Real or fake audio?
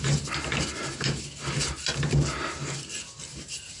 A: fake